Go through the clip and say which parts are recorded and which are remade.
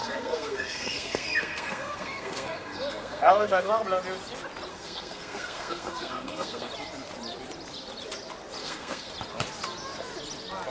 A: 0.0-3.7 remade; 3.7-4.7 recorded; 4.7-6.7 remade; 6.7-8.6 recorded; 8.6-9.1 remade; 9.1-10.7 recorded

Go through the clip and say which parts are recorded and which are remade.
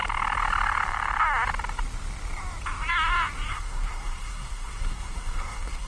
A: 0.0-3.5 recorded; 3.5-5.9 remade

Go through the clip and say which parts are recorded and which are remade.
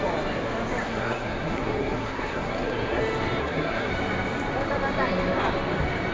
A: 0.0-0.8 recorded; 0.8-3.0 remade; 3.0-3.4 recorded; 3.4-3.9 remade; 3.9-6.1 recorded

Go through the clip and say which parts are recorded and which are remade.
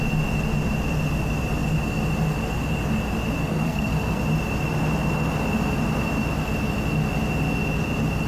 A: 0.0-3.4 recorded; 3.4-4.2 remade; 4.2-8.3 recorded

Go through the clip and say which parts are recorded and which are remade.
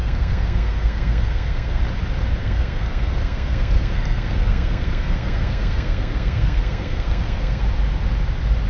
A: 0.0-1.8 remade; 1.8-2.4 recorded; 2.4-7.6 remade; 7.6-8.7 recorded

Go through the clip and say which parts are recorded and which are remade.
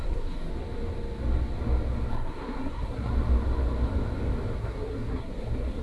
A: 0.0-0.5 remade; 0.5-2.1 recorded; 2.1-3.1 remade; 3.1-4.6 recorded; 4.6-5.8 remade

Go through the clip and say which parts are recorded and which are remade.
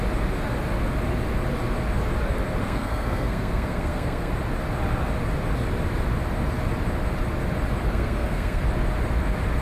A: 0.0-2.6 recorded; 2.6-4.3 remade; 4.3-7.9 recorded; 7.9-8.6 remade; 8.6-9.6 recorded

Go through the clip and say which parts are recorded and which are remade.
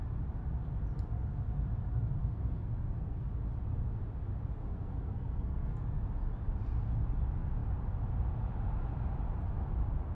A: 0.0-2.2 recorded; 2.2-3.3 remade; 3.3-4.6 recorded; 4.6-5.8 remade; 5.8-10.1 recorded